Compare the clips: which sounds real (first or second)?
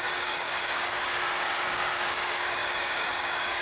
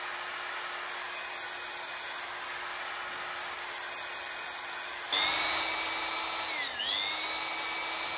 second